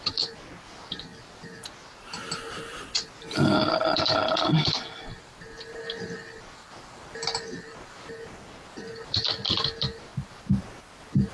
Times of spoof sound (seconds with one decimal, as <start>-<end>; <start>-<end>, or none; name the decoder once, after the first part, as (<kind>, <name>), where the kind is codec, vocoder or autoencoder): 0.0-1.1 (vocoder, BigVGAN v2); 3.7-11.3